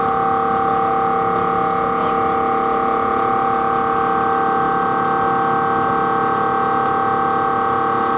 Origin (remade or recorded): recorded